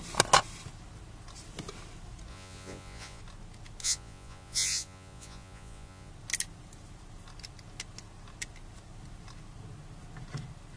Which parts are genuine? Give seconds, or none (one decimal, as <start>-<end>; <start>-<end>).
0.0-2.3; 3.2-3.8; 6.1-10.8